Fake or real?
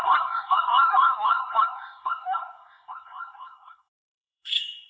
fake